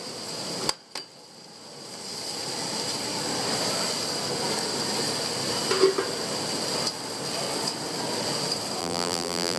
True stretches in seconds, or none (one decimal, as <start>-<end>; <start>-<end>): 0.0-8.8

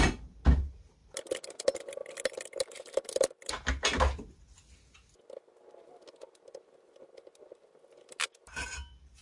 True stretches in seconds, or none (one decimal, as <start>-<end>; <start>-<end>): 0.0-9.2